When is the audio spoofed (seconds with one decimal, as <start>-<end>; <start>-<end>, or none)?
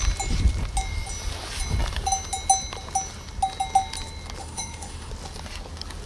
4.4-5.1